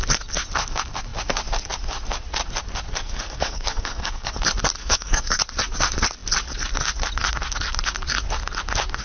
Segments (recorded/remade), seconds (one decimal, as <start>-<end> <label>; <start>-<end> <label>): 0.0-3.0 recorded; 3.0-4.3 remade; 4.3-4.8 recorded; 4.8-5.4 remade; 5.4-9.0 recorded